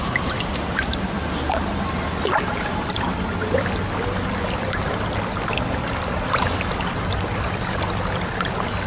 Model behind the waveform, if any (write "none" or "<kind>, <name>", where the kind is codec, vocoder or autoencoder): none